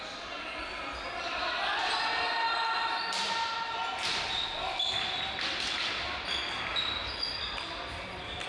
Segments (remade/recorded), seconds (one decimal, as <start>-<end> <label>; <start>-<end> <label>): 0.0-8.5 recorded